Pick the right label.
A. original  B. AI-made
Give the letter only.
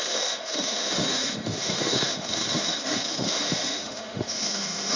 B